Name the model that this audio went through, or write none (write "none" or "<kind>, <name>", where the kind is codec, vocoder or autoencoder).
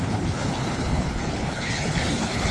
codec, HILCodec